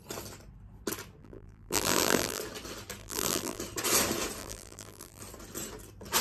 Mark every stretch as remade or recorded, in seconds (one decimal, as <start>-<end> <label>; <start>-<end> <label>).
0.0-1.2 recorded; 1.2-2.4 remade; 2.4-3.0 recorded; 3.0-3.6 remade; 3.6-4.4 recorded; 4.4-5.2 remade; 5.2-6.2 recorded